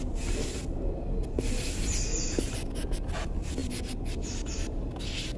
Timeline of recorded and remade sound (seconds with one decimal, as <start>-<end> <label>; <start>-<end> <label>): 0.0-5.4 recorded